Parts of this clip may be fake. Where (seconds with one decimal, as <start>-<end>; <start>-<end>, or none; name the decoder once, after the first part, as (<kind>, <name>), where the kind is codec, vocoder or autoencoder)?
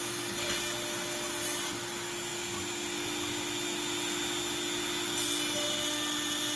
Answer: none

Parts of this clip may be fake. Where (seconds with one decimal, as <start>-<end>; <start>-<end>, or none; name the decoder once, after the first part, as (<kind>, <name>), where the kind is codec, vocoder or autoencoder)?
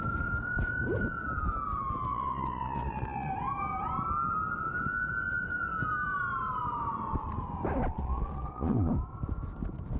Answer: 2.1-3.3 (vocoder, Vocos); 7.9-8.9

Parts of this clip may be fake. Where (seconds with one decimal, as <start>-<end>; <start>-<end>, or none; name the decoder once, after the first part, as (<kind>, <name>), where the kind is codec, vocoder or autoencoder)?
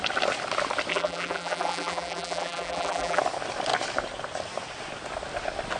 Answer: 0.9-3.2 (vocoder, BigVGAN v2)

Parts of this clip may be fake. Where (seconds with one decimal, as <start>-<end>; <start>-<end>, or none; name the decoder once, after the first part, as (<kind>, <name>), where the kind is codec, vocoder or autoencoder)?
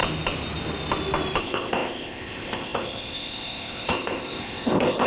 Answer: 1.4-5.1 (codec, ZipCodec)